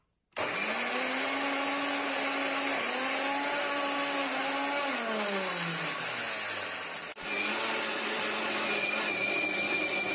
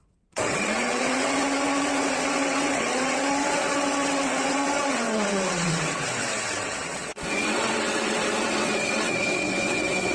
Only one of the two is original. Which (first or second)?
first